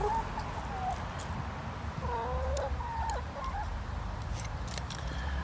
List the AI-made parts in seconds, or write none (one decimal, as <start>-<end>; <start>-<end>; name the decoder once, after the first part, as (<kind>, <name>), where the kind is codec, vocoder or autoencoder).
2.6-5.4 (vocoder, BigVGAN v2)